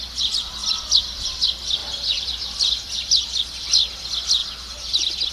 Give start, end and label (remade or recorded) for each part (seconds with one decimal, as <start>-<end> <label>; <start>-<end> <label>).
0.0-1.8 recorded; 1.8-3.1 remade; 3.1-5.3 recorded